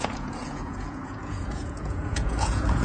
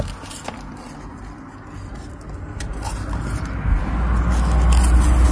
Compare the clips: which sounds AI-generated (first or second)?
first